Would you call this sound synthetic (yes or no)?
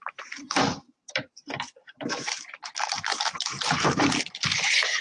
yes